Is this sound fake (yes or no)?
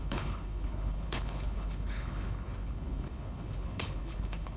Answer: yes